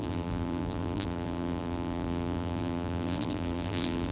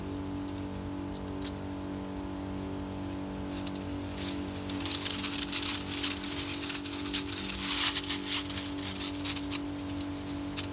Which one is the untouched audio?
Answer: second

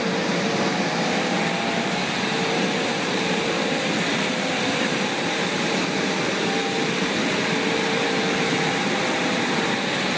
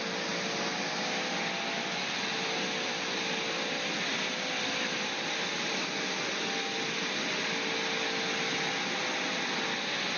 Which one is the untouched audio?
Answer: second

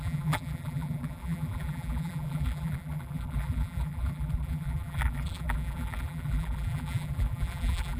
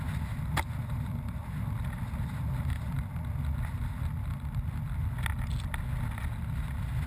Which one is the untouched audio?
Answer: second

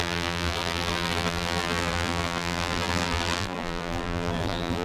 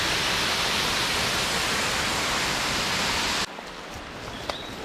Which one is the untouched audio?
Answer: second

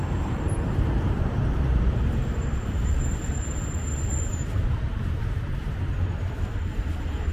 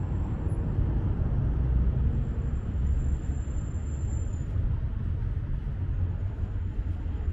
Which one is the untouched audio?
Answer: second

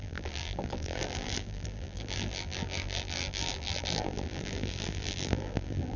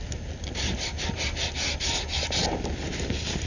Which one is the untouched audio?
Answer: second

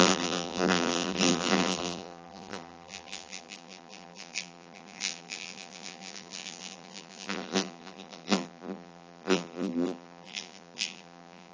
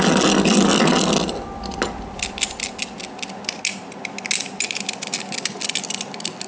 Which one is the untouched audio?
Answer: second